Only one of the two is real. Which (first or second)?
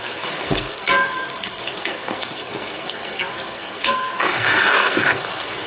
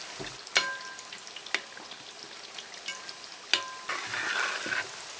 second